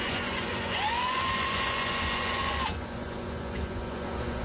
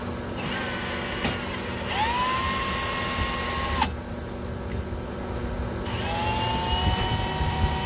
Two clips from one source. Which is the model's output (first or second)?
first